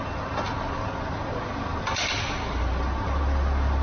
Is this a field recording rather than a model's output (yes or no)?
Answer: yes